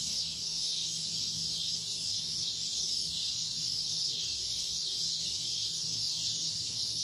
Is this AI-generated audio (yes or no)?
yes